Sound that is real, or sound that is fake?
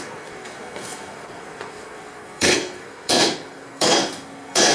fake